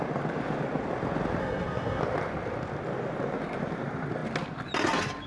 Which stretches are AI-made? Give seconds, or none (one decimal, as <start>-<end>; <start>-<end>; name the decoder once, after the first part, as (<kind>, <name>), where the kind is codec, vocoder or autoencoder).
1.4-2.0 (codec, SNAC)